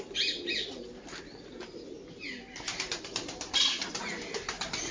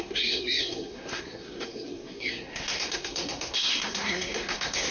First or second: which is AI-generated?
second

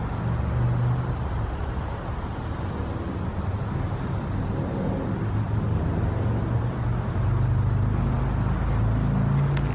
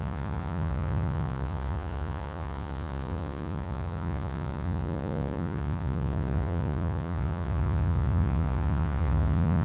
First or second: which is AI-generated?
second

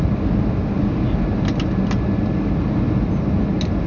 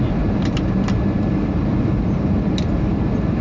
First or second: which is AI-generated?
second